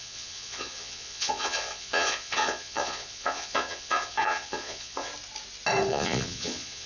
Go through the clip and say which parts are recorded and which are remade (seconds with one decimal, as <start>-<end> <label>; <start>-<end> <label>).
0.0-5.1 remade; 5.1-5.9 recorded; 5.9-6.9 remade